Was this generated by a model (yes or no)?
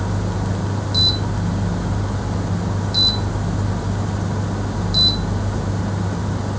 no